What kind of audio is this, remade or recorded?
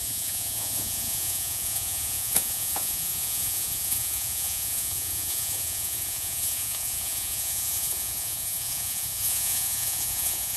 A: remade